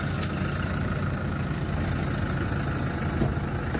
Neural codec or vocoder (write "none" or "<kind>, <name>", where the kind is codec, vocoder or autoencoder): none